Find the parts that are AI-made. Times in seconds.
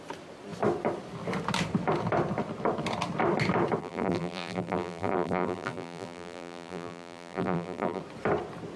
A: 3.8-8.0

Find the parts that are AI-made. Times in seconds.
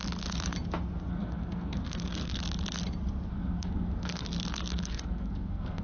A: 1.1-2.4; 3.3-4.3; 4.7-5.8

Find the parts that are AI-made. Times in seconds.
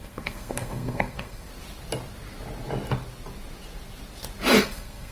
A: 0.0-1.5; 4.6-5.1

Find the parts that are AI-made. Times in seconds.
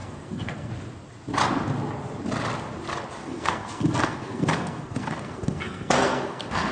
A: 0.0-0.7; 3.2-6.7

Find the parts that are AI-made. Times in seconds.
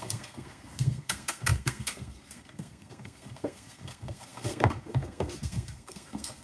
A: 0.0-6.4